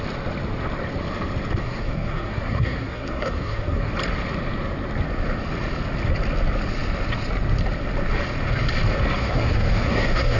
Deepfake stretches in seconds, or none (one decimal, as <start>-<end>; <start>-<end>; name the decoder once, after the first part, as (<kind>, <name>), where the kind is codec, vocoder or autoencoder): 1.6-3.9 (codec, SNAC); 9.2-10.4